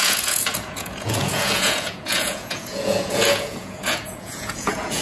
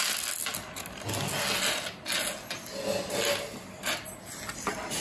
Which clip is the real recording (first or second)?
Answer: second